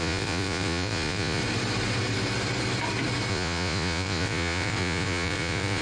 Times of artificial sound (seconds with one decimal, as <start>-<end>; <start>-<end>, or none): 0.0-1.4; 3.3-5.8

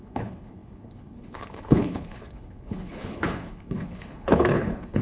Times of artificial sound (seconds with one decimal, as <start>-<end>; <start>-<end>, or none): 0.0-5.0